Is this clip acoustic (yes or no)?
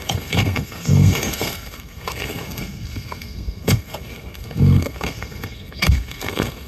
no